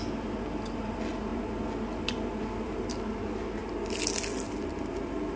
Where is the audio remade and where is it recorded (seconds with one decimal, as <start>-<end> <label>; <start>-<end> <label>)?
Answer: 0.0-5.4 recorded